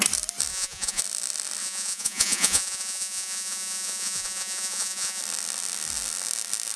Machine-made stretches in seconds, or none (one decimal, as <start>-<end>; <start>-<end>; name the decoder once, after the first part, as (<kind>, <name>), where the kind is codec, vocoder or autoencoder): 0.5-1.0 (vocoder, Vocos); 1.6-5.2